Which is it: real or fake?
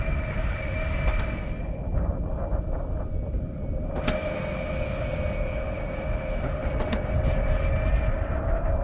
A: real